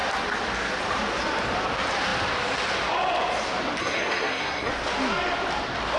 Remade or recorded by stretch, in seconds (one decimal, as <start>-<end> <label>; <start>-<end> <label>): 0.0-3.8 recorded; 3.8-4.7 remade; 4.7-6.0 recorded